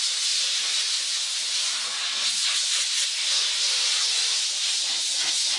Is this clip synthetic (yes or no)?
no